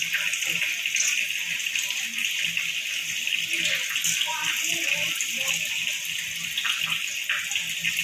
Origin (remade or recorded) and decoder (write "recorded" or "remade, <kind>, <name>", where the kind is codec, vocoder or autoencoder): recorded